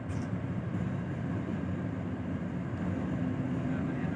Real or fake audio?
real